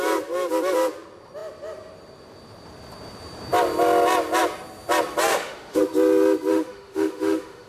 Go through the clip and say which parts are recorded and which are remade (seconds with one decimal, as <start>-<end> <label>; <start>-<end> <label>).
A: 0.0-5.3 recorded; 5.3-5.8 remade; 5.8-6.5 recorded; 6.5-7.7 remade